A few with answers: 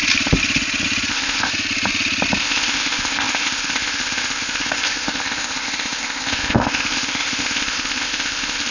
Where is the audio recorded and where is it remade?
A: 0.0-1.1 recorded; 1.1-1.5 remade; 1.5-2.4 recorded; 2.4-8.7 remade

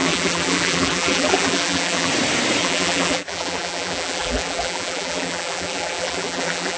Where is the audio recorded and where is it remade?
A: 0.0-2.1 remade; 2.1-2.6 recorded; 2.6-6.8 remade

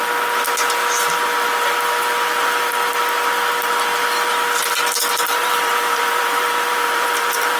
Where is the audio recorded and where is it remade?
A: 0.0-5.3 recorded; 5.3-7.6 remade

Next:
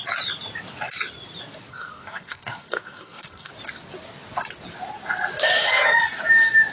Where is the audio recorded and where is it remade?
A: 0.0-1.7 recorded; 1.7-3.5 remade; 3.5-6.7 recorded